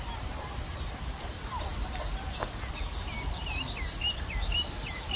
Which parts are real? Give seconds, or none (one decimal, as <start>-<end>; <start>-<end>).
0.0-5.2